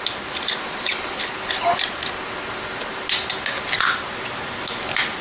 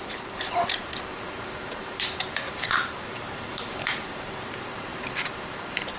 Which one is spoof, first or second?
second